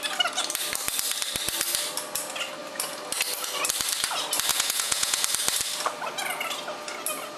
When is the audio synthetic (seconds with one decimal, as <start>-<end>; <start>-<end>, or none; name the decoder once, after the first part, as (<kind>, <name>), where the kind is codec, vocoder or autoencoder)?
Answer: 4.5-5.2 (vocoder, Vocos)